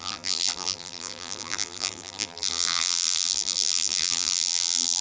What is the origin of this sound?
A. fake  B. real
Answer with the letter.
A